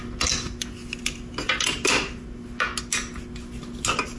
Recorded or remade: recorded